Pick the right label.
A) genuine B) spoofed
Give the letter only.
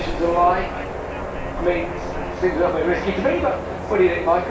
A